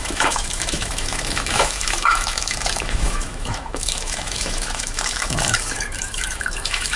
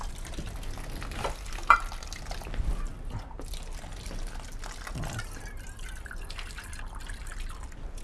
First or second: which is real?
second